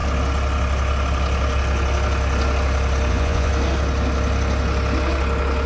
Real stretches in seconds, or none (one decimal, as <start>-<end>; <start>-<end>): 0.0-3.1; 3.5-5.7